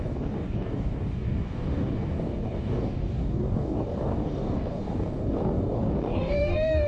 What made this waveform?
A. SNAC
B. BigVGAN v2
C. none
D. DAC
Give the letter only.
D